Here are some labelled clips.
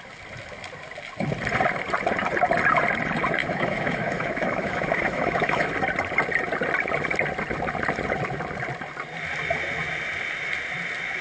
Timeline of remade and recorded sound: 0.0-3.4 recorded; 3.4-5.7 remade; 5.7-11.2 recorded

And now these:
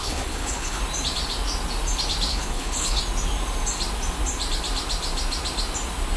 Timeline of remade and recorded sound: 0.0-0.8 remade; 0.8-2.3 recorded; 2.3-3.0 remade; 3.0-6.2 recorded

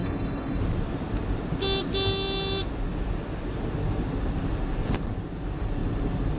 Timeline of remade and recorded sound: 0.0-0.6 remade; 0.6-6.4 recorded

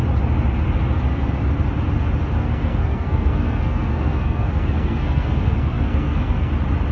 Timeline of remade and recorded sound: 0.0-2.4 recorded; 2.4-6.5 remade; 6.5-6.9 recorded

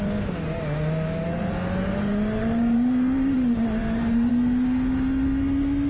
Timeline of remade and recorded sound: 0.0-1.8 recorded; 1.8-4.3 remade; 4.3-5.9 recorded

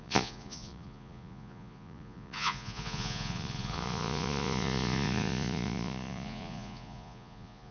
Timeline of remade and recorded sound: 0.0-7.7 remade

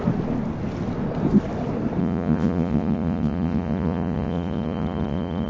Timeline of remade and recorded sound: 0.0-2.0 recorded; 2.0-5.5 remade

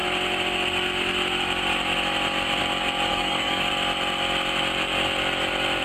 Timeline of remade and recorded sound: 0.0-3.1 recorded; 3.1-3.7 remade; 3.7-5.8 recorded